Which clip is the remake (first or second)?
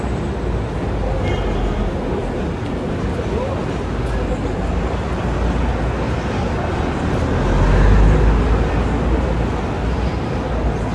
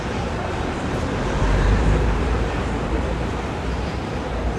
second